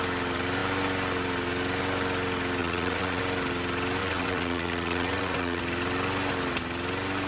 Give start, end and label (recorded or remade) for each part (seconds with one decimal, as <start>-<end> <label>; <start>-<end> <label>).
0.0-2.6 recorded; 2.6-3.2 remade; 3.2-4.0 recorded; 4.0-5.6 remade; 5.6-7.3 recorded